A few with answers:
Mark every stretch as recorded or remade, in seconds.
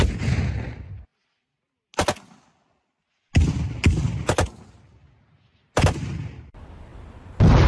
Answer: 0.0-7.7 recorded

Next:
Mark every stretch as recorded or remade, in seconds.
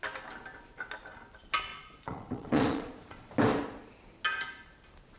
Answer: 0.0-1.7 recorded; 1.7-3.3 remade; 3.3-5.2 recorded